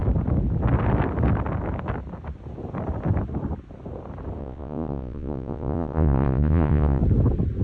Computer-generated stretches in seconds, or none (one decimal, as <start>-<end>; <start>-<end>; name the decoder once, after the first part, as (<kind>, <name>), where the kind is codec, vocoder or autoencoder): 4.4-7.0 (vocoder, Vocos)